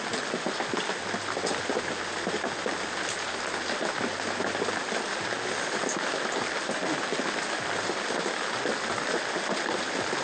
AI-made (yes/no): no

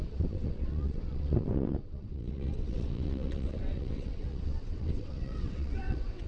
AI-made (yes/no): yes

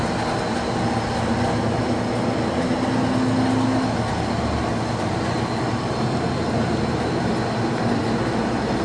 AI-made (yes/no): no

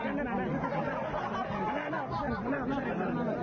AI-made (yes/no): no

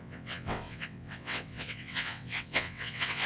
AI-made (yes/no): yes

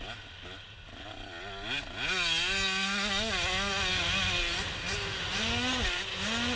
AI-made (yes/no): no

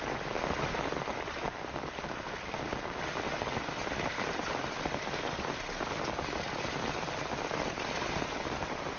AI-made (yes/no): no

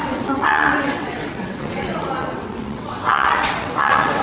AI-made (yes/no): yes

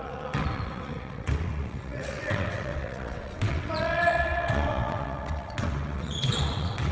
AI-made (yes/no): yes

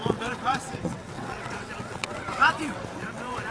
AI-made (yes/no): yes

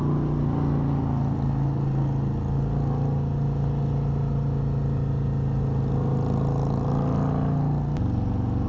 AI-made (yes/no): no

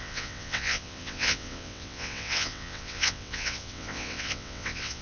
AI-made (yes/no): yes